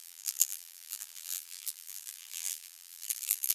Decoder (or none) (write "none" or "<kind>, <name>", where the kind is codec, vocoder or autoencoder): vocoder, BigVGAN v2